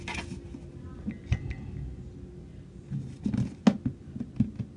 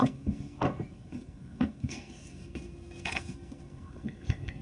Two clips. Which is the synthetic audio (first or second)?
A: second